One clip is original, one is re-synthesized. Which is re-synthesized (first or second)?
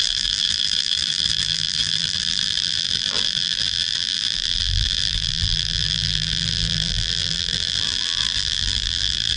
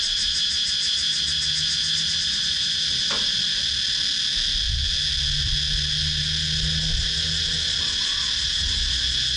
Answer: first